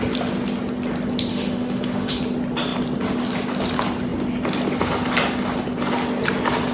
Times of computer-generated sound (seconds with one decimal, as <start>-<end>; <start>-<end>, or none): 1.3-2.2